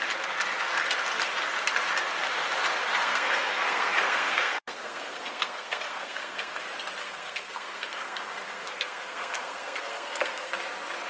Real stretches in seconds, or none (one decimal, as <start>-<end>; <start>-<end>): 0.0-3.0; 6.6-7.0; 10.5-11.1

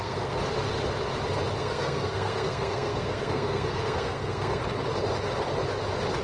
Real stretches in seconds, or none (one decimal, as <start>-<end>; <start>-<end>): 0.4-1.6; 4.6-6.2